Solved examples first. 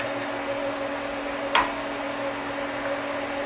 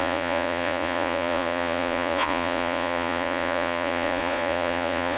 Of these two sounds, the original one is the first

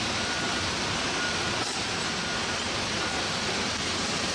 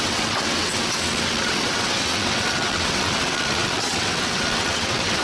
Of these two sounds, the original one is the first